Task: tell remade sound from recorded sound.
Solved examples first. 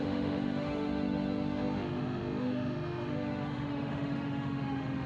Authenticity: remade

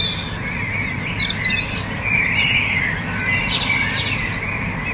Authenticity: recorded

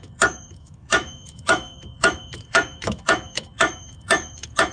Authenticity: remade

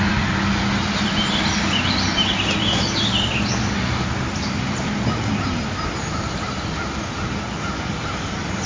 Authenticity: recorded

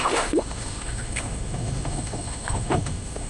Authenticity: remade